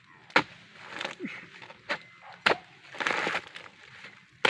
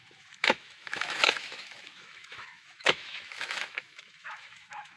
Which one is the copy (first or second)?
second